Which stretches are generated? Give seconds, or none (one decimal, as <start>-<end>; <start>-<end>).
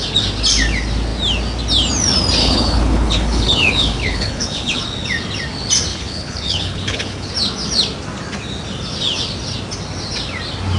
2.4-4.8; 5.9-7.3